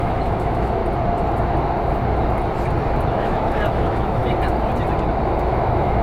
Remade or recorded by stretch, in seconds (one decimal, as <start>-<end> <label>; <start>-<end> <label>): 0.0-0.8 remade; 0.8-3.1 recorded; 3.1-4.2 remade; 4.2-5.2 recorded; 5.2-6.0 remade